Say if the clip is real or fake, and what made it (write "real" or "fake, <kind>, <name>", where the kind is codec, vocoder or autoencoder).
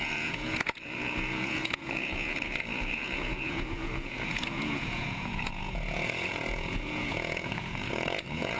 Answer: fake, vocoder, Vocos